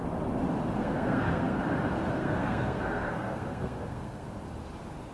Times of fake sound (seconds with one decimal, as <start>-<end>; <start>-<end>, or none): 0.8-1.6; 2.2-4.3